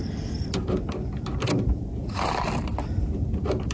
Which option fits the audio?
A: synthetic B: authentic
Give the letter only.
B